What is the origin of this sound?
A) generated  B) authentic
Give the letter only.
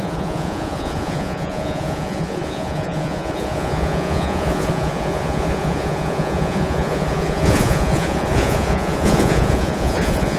A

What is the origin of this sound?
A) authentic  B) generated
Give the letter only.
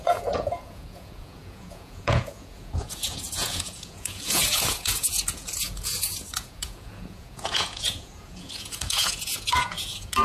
B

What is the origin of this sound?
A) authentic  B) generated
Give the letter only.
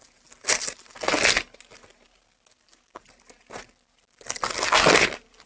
A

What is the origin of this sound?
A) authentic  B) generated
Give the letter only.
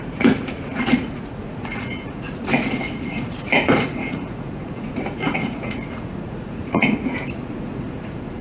B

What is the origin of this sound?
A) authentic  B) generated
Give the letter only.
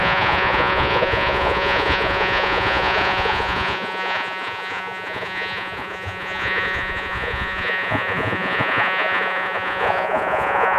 B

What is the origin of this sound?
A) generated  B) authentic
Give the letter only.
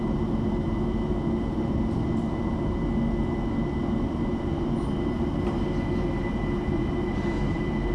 B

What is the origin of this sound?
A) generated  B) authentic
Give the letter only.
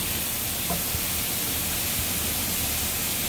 B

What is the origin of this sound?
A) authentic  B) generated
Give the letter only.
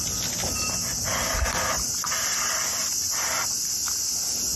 A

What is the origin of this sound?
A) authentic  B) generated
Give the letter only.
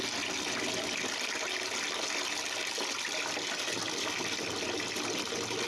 A